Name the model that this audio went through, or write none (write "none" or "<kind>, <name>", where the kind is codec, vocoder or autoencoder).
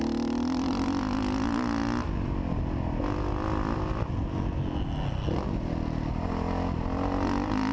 none